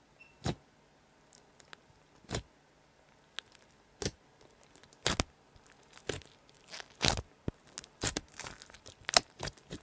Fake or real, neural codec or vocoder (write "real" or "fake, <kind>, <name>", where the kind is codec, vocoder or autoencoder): real